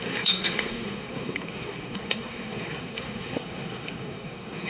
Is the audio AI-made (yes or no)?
yes